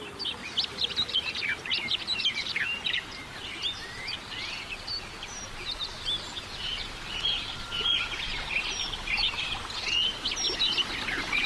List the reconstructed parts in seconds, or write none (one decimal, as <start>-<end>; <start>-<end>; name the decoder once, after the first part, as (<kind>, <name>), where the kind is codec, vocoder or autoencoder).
0.7-6.0 (vocoder, BigVGAN v2)

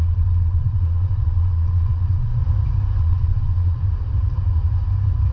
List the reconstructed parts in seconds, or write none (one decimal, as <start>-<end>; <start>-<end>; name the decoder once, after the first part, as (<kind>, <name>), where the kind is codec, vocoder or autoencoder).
0.0-2.4 (vocoder, Vocos); 3.0-3.8